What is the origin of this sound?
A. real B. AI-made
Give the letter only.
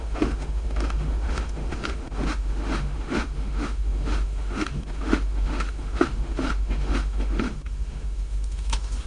B